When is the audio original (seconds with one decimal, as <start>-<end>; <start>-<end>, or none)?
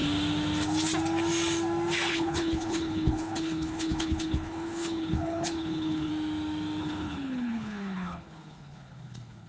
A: 0.0-2.1; 6.1-6.8